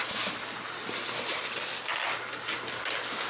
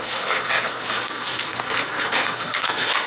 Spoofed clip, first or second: second